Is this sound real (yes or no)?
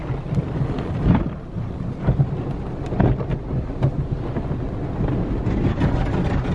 yes